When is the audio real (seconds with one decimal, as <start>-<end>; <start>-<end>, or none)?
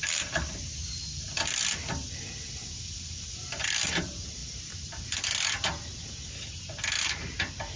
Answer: 0.0-7.8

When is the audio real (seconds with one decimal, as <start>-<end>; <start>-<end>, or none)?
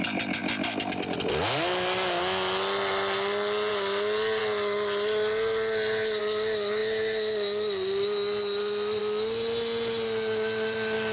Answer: 0.0-11.1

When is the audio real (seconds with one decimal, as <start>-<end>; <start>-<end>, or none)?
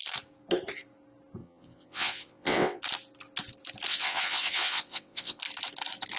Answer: 0.0-1.4; 2.8-3.9; 5.4-6.2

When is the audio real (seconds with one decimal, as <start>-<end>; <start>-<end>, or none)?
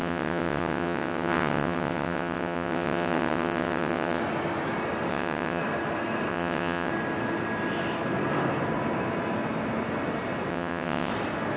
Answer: 4.2-5.1; 5.6-6.3; 6.9-10.5; 11.1-11.6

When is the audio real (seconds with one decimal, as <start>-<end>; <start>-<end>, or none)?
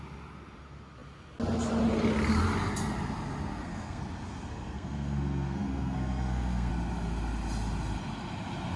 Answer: 0.0-3.5; 4.0-4.5; 6.7-8.8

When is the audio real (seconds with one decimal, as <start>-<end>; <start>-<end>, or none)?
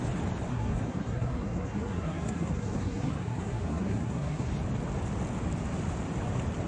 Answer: 0.0-0.5; 4.5-6.7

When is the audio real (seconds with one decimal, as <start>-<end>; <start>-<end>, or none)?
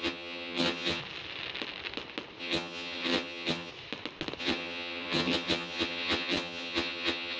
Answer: 1.0-2.4; 3.7-4.4